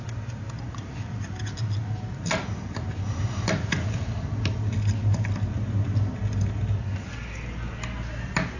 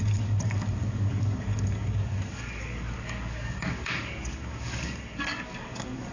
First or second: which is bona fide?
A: first